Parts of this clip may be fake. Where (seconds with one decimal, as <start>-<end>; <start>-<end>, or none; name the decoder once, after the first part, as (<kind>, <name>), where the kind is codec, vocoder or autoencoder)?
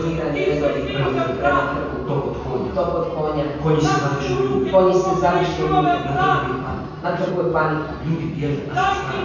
none